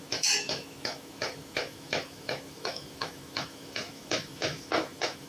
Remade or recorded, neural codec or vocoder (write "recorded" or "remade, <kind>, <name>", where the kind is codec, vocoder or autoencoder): remade, autoencoder, DAC-VAE